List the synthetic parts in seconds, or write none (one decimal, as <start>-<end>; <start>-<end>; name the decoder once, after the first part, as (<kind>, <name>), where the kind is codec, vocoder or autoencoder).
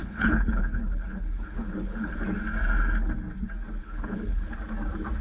0.0-2.1 (codec, HILCodec); 3.8-4.5